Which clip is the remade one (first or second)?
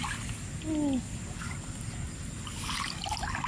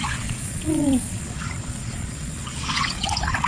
second